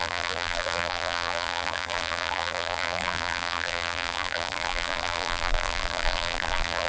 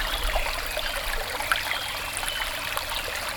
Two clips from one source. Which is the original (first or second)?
second